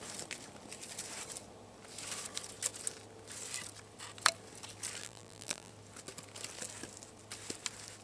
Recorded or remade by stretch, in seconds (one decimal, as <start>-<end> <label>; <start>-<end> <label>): 0.0-5.0 recorded; 5.0-5.7 remade; 5.7-8.0 recorded